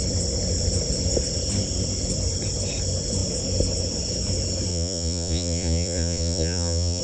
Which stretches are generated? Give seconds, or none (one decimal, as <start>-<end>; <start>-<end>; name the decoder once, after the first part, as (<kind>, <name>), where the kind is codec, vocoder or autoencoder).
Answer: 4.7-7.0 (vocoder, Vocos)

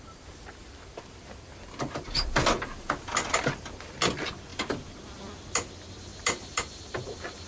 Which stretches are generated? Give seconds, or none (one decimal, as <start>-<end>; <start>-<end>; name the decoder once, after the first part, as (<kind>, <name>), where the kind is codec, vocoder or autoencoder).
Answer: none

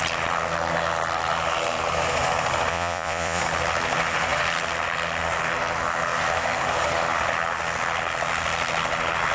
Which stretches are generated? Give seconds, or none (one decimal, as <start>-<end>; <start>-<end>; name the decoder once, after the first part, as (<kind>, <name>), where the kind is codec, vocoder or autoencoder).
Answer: 2.7-3.4 (vocoder, Vocos)